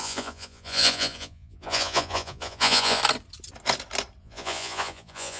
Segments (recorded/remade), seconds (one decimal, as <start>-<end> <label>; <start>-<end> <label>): 0.0-3.0 remade; 3.0-4.2 recorded; 4.2-5.4 remade